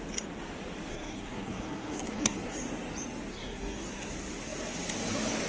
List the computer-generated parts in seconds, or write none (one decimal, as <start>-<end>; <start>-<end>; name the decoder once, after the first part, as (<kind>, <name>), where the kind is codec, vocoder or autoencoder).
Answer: 0.9-2.6 (codec, SNAC); 3.3-4.1